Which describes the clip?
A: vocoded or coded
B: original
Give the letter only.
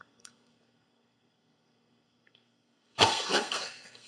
A